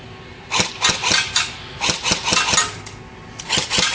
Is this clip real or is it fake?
real